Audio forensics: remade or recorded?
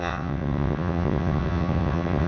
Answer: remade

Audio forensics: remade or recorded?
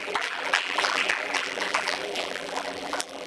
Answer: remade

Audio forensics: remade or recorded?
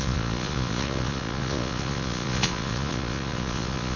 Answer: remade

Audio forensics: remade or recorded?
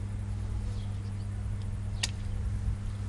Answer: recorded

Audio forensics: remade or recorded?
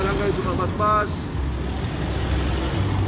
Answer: recorded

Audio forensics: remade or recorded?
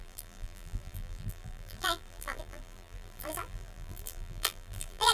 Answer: remade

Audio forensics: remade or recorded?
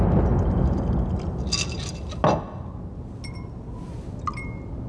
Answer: recorded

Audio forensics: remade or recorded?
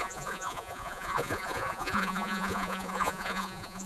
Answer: remade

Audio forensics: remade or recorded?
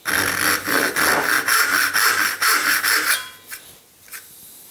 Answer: recorded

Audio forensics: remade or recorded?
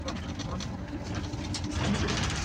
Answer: recorded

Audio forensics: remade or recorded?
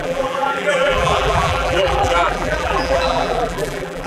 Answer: remade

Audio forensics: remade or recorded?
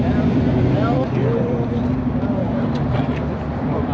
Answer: remade